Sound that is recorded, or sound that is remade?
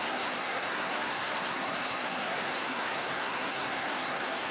remade